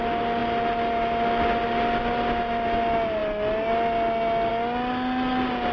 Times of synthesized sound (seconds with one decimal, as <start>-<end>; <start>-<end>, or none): none